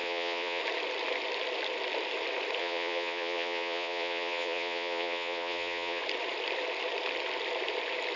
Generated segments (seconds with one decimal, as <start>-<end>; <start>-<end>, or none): 0.0-0.6; 2.6-6.0